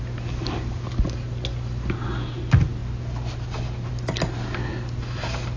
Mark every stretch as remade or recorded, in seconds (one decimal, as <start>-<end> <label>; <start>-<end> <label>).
0.0-5.6 recorded